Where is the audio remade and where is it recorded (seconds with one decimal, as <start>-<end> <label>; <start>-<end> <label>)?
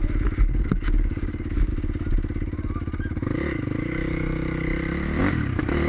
0.0-0.6 recorded; 0.6-1.7 remade; 1.7-5.2 recorded; 5.2-5.9 remade